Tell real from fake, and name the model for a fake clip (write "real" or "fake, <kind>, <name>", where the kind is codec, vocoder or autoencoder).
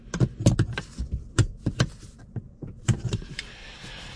real